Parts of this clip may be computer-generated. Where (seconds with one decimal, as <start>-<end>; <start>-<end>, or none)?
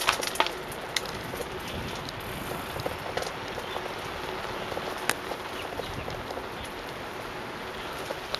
none